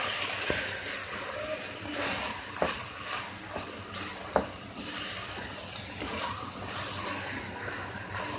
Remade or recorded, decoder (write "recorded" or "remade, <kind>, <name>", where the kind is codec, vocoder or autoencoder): recorded